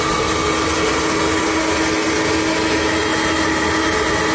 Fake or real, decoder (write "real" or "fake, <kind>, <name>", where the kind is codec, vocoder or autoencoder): real